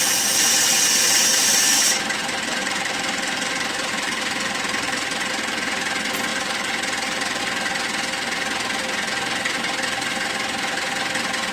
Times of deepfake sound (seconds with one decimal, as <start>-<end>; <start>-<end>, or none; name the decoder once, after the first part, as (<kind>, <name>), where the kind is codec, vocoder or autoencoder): 1.5-5.3 (vocoder, BigVGAN v2); 6.3-7.4